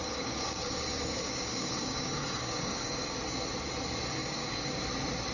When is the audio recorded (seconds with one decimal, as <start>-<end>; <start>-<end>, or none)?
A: 3.2-4.2; 4.8-5.3